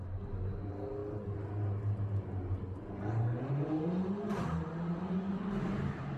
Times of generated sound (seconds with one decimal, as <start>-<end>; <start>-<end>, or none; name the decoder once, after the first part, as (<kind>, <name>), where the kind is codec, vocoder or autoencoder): none